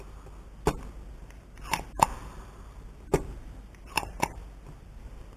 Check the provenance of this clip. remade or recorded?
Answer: recorded